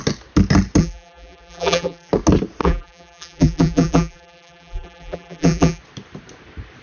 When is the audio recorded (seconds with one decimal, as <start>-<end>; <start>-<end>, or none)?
0.0-0.8; 2.1-2.6; 5.8-6.8